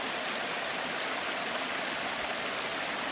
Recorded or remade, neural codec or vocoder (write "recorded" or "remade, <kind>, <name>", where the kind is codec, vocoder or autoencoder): recorded